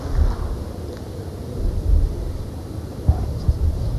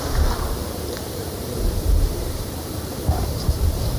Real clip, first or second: first